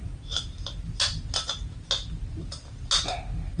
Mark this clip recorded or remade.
recorded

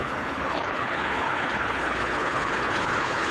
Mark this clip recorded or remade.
remade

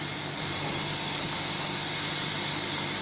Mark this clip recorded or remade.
recorded